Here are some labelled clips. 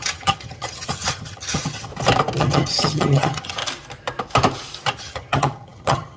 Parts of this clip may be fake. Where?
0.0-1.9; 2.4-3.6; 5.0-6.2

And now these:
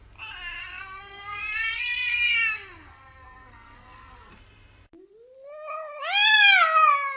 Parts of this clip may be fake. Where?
0.6-4.3

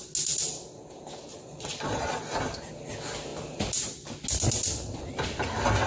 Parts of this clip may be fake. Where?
1.3-2.2

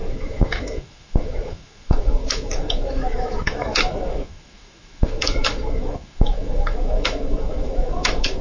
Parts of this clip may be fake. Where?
0.0-8.4

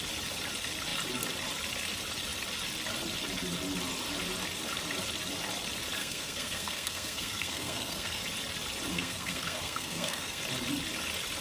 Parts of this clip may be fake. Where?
6.0-8.2; 8.9-10.4

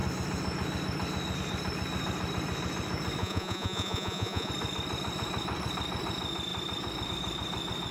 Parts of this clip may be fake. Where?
3.2-4.5